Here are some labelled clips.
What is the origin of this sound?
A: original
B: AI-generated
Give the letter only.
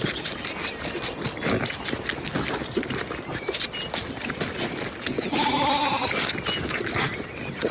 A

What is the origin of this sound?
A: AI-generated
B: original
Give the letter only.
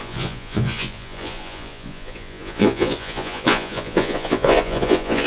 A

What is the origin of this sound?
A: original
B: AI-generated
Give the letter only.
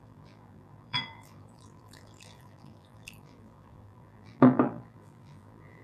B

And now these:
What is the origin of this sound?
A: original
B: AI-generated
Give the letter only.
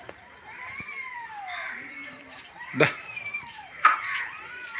B